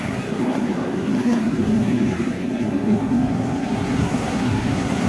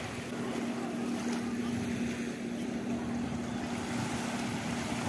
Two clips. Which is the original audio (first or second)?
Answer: second